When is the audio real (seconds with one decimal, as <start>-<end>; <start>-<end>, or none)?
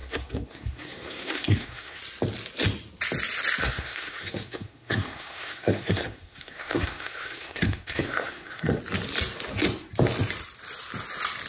2.0-3.6; 8.8-11.5